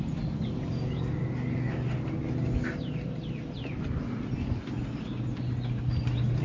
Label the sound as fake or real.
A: real